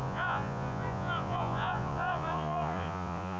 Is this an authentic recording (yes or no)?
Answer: no